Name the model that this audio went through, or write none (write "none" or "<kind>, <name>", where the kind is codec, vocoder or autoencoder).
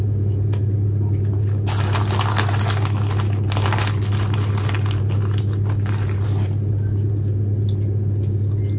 none